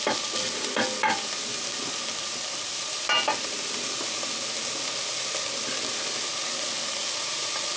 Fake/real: real